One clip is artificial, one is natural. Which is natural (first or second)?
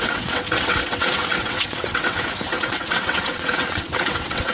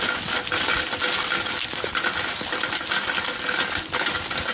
second